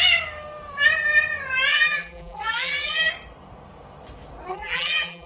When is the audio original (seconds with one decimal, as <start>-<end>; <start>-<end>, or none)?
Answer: 0.0-1.7; 3.1-4.5